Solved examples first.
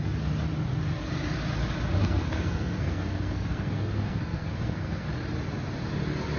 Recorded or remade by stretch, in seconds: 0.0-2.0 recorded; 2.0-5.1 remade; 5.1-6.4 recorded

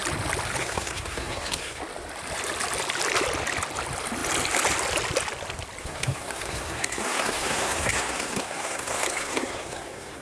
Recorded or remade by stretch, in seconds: 0.0-0.6 recorded; 0.6-1.8 remade; 1.8-5.8 recorded; 5.8-10.2 remade

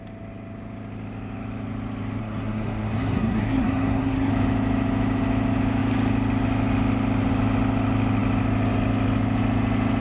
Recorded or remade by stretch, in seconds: 0.0-2.2 recorded; 2.2-4.3 remade; 4.3-10.0 recorded

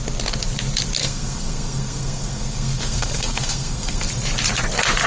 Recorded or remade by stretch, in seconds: 0.0-1.0 recorded; 1.0-4.1 remade; 4.1-5.1 recorded

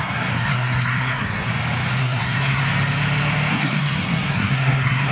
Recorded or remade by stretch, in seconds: 0.0-1.5 remade; 1.5-2.0 recorded; 2.0-2.6 remade; 2.6-3.5 recorded; 3.5-5.1 remade

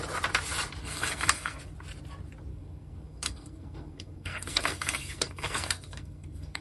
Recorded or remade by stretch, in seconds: 0.0-0.8 recorded; 0.8-1.6 remade; 1.6-2.5 recorded; 2.5-6.6 remade

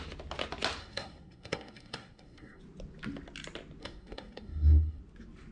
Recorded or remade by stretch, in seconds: 0.0-0.8 recorded; 0.8-2.6 remade; 2.6-3.8 recorded; 3.8-5.0 remade; 5.0-5.5 recorded